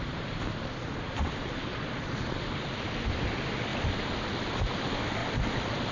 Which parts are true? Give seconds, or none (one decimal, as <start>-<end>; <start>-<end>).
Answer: 0.0-1.7; 3.1-3.7; 4.3-5.2